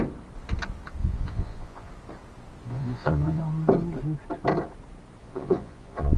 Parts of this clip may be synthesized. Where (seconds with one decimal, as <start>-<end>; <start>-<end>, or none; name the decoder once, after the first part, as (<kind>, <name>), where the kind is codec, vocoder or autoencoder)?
1.0-1.9 (vocoder, Vocos); 2.6-3.4; 5.2-6.2